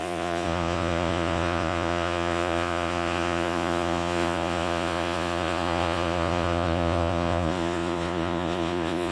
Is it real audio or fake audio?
fake